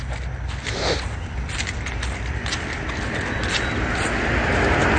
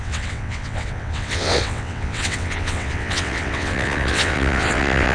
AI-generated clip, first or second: second